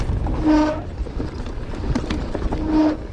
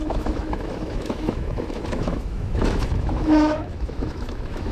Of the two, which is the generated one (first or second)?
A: second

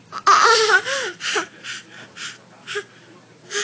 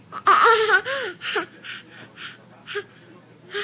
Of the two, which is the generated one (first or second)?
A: first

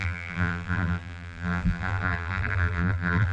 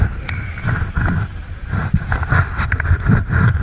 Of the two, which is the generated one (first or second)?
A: first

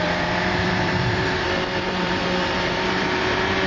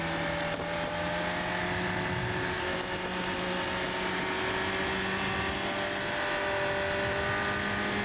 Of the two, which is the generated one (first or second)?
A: first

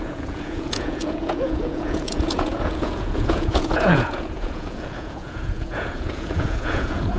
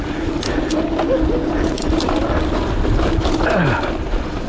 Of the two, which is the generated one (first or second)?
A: first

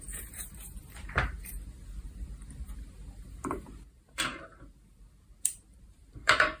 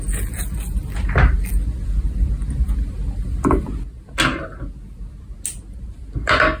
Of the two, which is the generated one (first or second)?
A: first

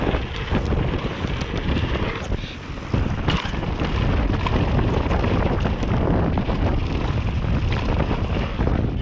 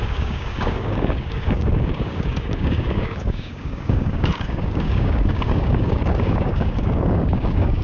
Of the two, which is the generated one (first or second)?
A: second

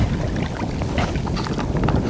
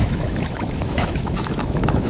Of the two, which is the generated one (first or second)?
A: second